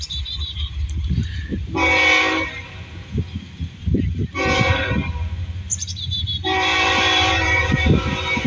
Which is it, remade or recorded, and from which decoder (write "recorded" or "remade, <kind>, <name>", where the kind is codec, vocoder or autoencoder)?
remade, vocoder, BigVGAN v2